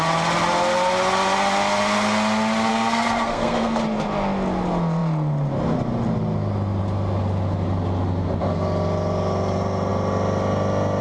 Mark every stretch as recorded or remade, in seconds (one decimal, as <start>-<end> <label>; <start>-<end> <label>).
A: 0.0-2.7 recorded; 2.7-3.8 remade; 3.8-11.0 recorded